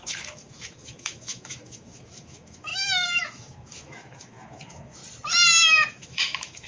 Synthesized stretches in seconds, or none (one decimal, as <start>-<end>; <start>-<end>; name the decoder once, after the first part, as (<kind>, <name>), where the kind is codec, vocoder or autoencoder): 0.0-5.0 (autoencoder, DAC-VAE); 5.9-6.7